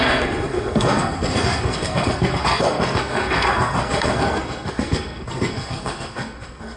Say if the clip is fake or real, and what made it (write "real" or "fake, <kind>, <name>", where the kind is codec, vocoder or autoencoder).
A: fake, codec, SNAC